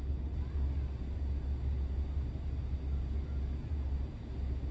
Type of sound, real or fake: real